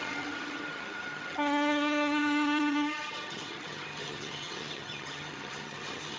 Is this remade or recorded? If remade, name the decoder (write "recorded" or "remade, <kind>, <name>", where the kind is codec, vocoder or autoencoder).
remade, vocoder, HiFi-GAN